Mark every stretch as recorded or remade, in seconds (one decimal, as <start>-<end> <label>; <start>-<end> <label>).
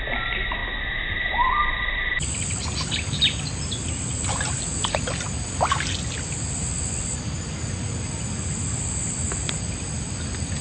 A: 0.0-10.6 recorded